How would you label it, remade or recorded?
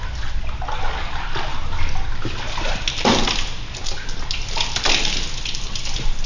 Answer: recorded